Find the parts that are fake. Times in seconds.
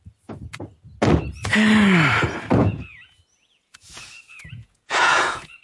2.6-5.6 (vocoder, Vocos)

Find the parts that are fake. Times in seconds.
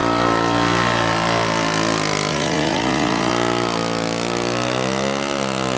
2.3-3.3 (vocoder, Vocos)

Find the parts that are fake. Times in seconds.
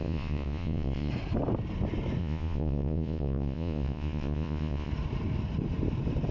0.0-1.1 (vocoder, Vocos); 2.2-4.9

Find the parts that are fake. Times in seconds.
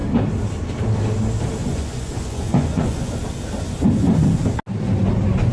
1.6-3.1 (vocoder, Vocos)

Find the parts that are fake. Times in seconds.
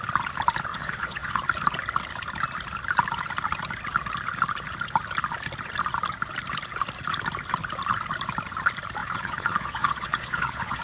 0.7-1.4 (vocoder, Vocos); 9.0-10.8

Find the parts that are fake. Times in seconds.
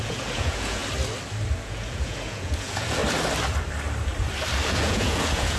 0.0-0.8 (vocoder, Vocos); 1.6-3.0; 4.7-5.6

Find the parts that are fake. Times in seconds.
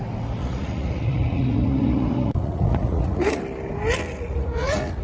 0.4-3.4 (vocoder, Vocos); 4.1-5.0